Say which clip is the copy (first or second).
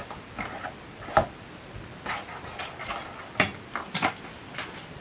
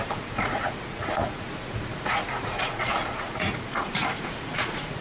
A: second